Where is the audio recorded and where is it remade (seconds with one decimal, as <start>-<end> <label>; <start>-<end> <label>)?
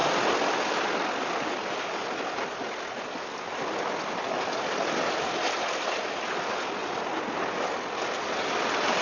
0.0-9.0 recorded